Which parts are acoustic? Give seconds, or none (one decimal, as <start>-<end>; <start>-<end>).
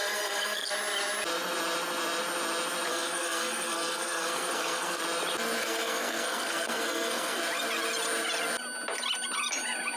0.7-2.9; 5.0-5.6; 7.4-10.0